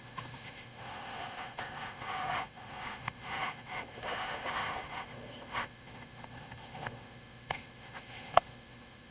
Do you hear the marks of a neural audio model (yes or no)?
yes